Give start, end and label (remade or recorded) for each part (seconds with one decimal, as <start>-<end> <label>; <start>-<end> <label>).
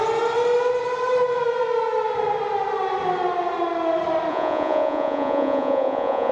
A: 0.0-4.3 recorded; 4.3-6.3 remade